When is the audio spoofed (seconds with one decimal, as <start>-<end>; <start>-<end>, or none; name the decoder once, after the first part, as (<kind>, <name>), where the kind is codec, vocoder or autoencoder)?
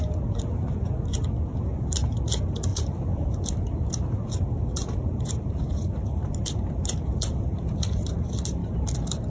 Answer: 2.7-7.4 (vocoder, BigVGAN v2)